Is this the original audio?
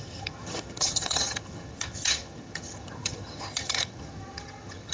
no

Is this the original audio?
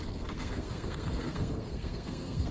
no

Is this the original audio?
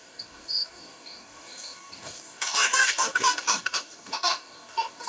no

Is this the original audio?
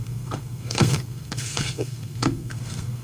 no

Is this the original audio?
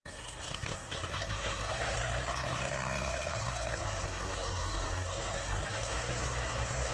no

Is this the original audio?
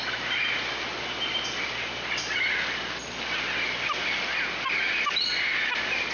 yes